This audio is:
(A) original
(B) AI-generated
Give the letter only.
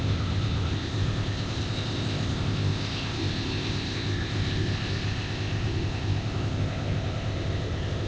B